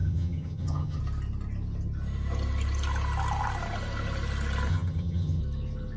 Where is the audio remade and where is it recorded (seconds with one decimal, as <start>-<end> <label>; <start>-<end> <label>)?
0.0-1.0 remade; 1.0-4.7 recorded; 4.7-5.4 remade; 5.4-6.0 recorded